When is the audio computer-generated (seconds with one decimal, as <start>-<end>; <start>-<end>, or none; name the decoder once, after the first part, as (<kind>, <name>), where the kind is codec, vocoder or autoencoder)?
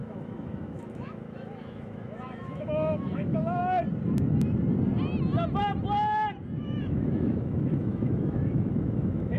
0.0-3.6 (autoencoder, DAC-VAE); 6.6-9.4